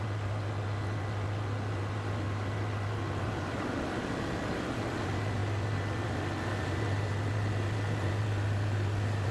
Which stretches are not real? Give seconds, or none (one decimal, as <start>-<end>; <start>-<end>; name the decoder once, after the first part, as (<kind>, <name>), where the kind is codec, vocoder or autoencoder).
none